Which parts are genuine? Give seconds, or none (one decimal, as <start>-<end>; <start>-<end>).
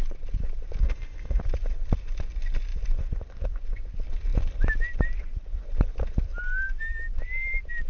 0.0-0.8; 1.4-7.9